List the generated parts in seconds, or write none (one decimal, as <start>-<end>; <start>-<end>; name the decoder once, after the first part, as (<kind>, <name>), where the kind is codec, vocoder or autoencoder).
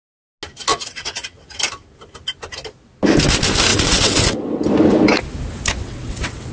0.7-1.6 (vocoder, WaveNeXt); 3.7-4.6; 5.8-6.5